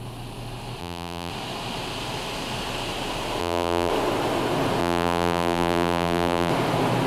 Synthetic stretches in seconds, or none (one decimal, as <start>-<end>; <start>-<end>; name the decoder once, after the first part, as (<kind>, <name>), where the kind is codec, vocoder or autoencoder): 0.8-1.3 (vocoder, BigVGAN v2); 3.4-3.9; 4.8-6.5